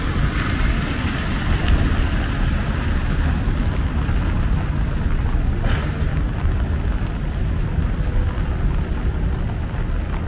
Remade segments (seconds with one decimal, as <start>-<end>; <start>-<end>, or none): none